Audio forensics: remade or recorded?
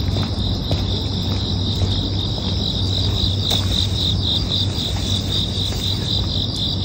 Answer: recorded